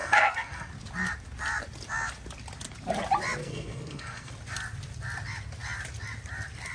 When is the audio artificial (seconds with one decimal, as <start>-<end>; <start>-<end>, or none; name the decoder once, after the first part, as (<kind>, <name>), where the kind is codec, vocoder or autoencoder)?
0.0-0.7 (codec, SNAC); 3.4-4.3